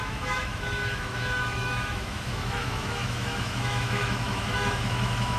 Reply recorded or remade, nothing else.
remade